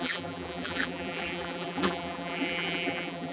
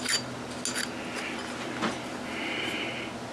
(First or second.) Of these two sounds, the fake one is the first